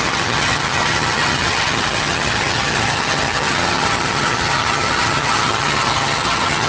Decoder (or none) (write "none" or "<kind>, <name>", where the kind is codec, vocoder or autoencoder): vocoder, HiFi-GAN